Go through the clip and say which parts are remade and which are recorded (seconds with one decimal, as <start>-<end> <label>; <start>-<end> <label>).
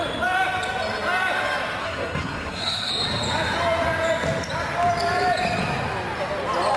0.0-1.8 recorded; 1.8-2.9 remade; 2.9-6.8 recorded